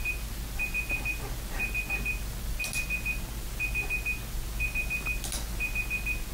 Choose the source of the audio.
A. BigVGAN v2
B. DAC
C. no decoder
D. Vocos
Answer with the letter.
C